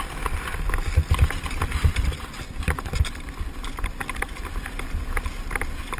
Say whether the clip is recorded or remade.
recorded